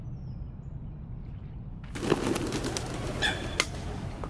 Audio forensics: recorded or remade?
recorded